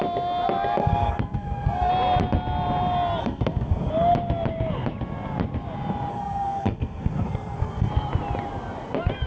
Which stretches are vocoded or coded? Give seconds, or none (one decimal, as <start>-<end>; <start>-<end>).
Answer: 0.8-1.9; 3.2-3.9; 6.1-7.9

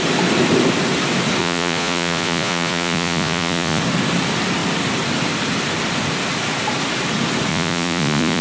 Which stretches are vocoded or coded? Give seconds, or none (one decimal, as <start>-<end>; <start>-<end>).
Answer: 1.4-3.8; 7.5-8.4

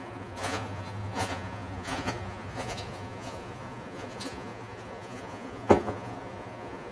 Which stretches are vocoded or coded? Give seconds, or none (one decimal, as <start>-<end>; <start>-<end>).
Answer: 0.0-6.9

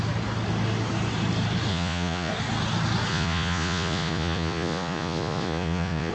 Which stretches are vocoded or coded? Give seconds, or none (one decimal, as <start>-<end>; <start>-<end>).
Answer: 1.7-2.3; 3.1-6.1

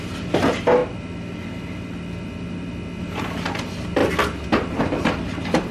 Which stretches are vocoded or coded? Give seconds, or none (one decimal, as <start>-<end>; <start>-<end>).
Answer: 0.0-0.8; 3.0-4.0; 4.8-5.7

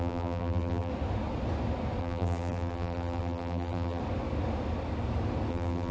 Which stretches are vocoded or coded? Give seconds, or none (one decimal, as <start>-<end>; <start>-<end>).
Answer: 0.0-0.9; 2.0-4.0; 5.5-5.9

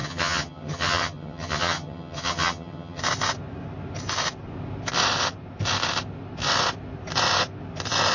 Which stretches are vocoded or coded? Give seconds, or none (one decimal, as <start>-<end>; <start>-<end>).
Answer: 0.0-3.0